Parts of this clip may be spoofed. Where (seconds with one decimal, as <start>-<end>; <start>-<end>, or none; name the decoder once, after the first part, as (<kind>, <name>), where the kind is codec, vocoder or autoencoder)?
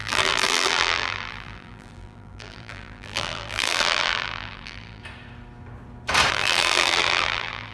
0.0-5.0 (vocoder, BigVGAN v2); 6.3-7.7